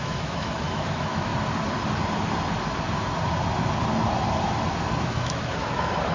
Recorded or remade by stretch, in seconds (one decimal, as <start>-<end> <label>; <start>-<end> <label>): 0.0-1.3 remade; 1.3-5.0 recorded; 5.0-6.1 remade